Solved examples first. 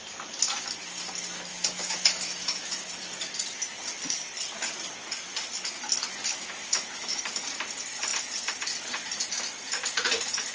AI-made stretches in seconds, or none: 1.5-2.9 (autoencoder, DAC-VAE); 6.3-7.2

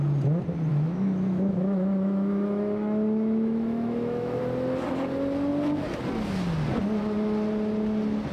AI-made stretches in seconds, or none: 0.7-4.4 (autoencoder, DAC-VAE)

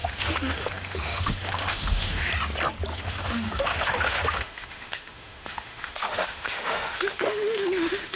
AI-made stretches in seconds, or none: 0.0-2.3 (autoencoder, DAC-VAE); 2.9-8.2

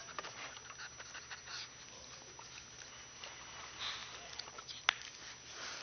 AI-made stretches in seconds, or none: none

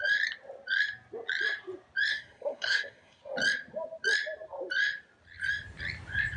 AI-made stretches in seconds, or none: 2.1-3.2 (codec, SNAC)